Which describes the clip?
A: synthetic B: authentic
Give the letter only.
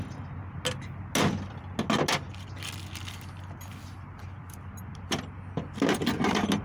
B